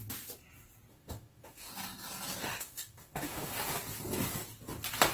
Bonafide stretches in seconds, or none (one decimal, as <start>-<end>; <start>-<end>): 0.0-0.9; 1.7-2.4; 3.5-5.1